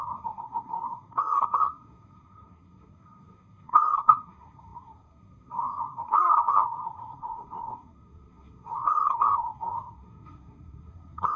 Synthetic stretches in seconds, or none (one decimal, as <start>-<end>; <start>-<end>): 0.0-11.4